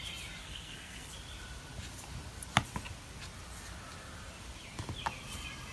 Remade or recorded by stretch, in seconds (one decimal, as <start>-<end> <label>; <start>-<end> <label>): 0.0-0.4 recorded; 0.4-1.1 remade; 1.1-5.7 recorded